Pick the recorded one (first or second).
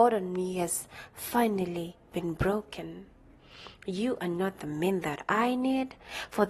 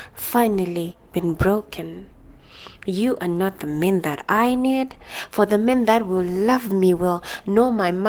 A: first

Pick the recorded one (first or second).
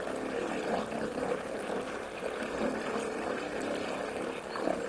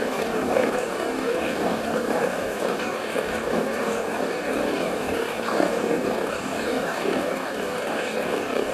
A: first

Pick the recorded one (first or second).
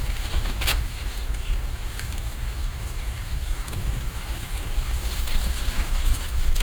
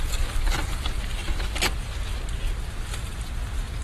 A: second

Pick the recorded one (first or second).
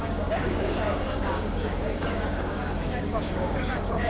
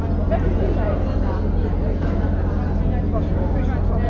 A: second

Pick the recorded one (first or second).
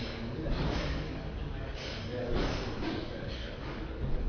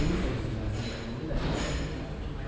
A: second